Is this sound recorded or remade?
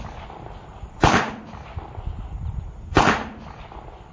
recorded